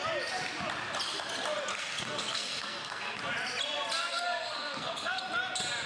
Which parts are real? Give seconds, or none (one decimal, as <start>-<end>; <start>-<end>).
0.0-1.7; 3.2-4.1; 5.2-5.9